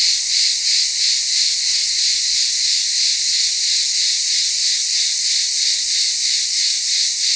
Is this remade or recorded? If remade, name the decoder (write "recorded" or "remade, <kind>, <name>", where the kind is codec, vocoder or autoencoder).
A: recorded